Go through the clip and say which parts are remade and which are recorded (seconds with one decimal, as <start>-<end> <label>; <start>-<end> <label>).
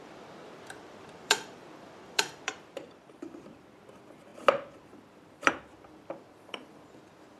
0.0-7.4 remade